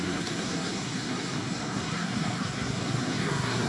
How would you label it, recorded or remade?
remade